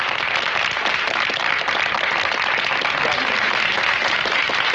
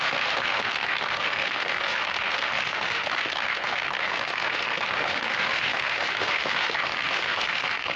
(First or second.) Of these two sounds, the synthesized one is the second